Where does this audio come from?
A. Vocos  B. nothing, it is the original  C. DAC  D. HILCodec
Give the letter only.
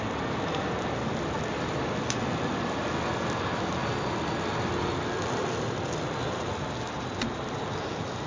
B